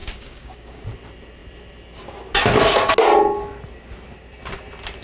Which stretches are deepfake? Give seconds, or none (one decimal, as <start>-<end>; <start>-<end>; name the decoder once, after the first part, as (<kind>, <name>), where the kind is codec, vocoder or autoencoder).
0.0-0.8 (codec, DAC)